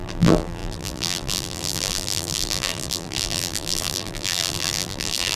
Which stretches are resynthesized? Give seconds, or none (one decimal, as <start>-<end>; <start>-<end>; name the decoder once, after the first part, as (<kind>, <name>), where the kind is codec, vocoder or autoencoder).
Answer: 0.0-5.4 (vocoder, BigVGAN v2)